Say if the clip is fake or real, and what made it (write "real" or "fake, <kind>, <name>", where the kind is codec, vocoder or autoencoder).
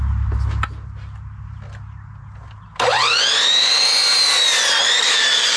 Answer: real